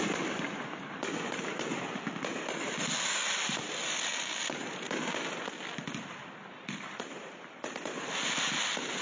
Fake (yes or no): no